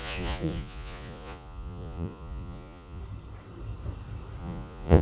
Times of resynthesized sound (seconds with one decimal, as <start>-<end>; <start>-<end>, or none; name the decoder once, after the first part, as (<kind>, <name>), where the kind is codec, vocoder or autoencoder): 0.0-3.0 (vocoder, Vocos); 4.4-5.0